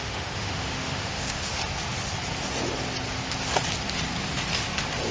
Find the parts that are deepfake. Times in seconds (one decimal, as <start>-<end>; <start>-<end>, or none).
0.0-1.6